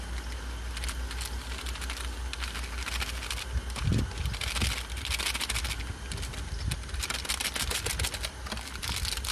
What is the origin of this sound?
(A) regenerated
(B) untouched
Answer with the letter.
B